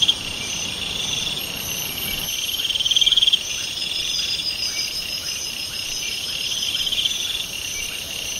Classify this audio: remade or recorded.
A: remade